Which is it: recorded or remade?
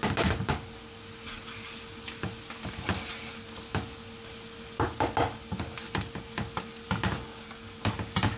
recorded